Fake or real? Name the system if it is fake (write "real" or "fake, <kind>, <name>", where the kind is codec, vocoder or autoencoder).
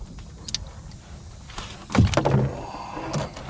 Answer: real